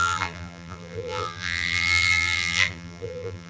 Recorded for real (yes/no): no